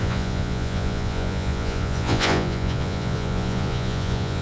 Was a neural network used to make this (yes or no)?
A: yes